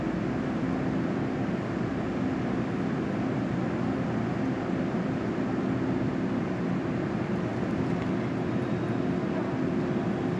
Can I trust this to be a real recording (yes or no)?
yes